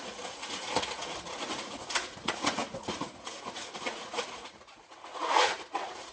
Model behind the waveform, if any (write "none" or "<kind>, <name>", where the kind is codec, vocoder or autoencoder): vocoder, Vocos